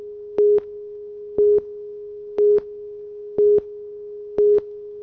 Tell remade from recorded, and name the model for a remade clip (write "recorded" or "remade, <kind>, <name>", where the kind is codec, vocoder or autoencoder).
remade, codec, DAC